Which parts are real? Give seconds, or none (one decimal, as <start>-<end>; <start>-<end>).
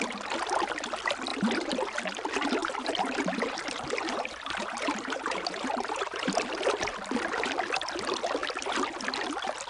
0.0-1.3; 2.0-2.6; 6.5-9.7